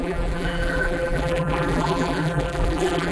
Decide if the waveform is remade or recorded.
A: remade